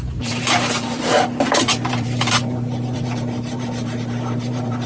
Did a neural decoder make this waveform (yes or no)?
yes